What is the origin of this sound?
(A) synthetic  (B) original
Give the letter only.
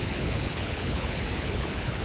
A